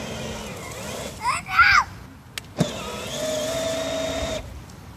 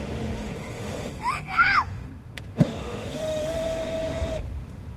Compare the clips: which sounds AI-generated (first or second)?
second